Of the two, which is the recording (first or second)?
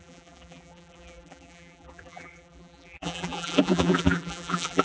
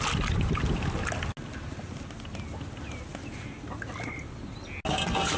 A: second